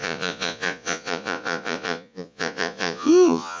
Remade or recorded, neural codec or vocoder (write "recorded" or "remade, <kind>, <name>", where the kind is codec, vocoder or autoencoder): remade, vocoder, Vocos